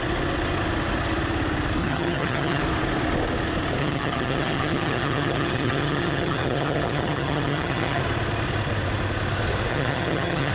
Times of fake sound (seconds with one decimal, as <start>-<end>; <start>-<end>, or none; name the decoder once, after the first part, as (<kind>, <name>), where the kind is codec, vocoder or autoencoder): 1.8-2.6 (vocoder, HiFi-GAN); 3.8-8.0; 9.7-10.5

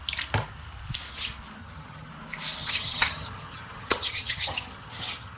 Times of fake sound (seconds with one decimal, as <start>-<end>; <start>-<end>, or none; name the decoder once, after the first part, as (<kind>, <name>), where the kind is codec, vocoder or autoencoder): 1.6-2.1 (vocoder, HiFi-GAN); 2.6-5.4

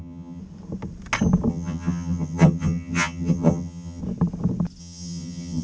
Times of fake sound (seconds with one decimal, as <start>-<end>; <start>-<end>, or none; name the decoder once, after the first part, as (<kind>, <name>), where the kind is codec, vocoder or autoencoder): 0.0-0.4 (vocoder, HiFi-GAN); 1.5-4.0; 4.8-5.6

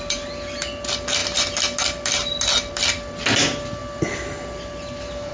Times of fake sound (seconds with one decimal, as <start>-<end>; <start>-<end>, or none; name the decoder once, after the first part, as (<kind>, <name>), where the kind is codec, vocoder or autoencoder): none

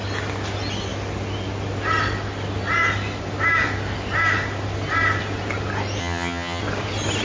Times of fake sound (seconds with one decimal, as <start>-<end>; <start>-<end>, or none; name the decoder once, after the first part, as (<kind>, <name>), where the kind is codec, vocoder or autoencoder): 6.0-6.6 (vocoder, HiFi-GAN)

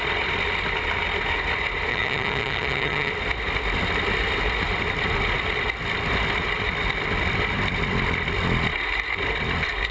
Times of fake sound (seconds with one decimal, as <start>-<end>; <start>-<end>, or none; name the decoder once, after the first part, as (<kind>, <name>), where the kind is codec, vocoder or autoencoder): 1.9-3.1 (vocoder, HiFi-GAN)